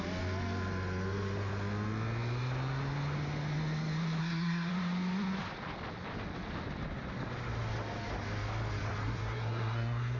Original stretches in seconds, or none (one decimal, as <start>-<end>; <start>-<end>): 0.0-4.2; 4.7-9.0